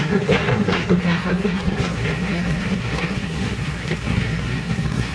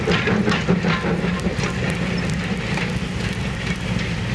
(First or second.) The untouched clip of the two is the second